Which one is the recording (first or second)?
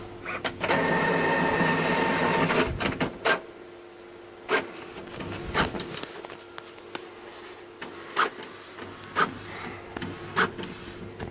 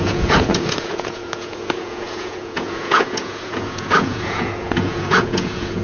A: first